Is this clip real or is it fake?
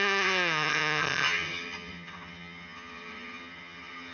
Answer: fake